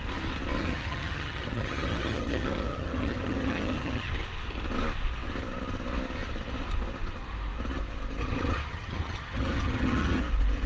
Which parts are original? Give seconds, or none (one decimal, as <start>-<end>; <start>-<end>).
0.0-0.6; 4.1-8.2; 10.2-10.7